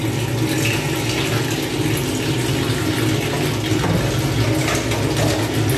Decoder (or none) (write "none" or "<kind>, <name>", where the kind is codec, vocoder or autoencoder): none